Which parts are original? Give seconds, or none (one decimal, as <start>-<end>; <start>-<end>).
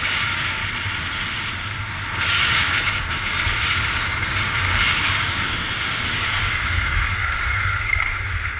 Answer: 0.6-2.2